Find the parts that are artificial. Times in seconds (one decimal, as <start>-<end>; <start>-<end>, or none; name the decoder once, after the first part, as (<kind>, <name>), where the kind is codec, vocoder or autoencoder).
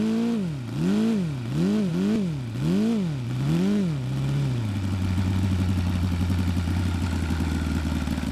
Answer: none